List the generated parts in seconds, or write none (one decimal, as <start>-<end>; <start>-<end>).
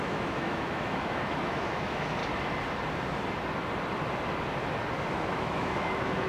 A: 0.0-2.2; 5.1-6.3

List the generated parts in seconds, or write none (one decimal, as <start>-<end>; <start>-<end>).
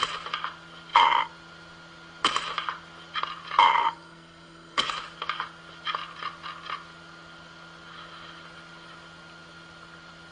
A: 3.8-4.9